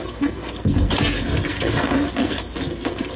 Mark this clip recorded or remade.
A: remade